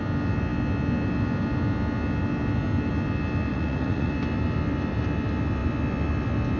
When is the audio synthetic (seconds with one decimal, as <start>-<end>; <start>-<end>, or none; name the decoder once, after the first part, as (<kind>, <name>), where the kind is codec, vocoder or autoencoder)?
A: 3.5-4.1 (vocoder, Vocos)